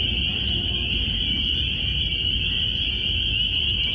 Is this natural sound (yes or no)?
yes